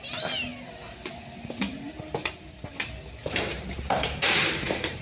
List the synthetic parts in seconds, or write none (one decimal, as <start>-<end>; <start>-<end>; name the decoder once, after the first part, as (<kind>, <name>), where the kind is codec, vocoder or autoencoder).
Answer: 3.2-5.0 (vocoder, BigVGAN v2)